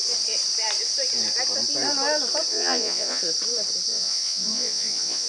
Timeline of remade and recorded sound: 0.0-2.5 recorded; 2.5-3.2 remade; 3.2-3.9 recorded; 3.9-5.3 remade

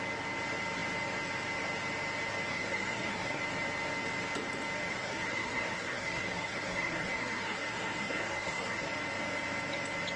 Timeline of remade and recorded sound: 0.0-2.5 recorded; 2.5-3.4 remade; 3.4-4.9 recorded; 4.9-8.9 remade; 8.9-10.2 recorded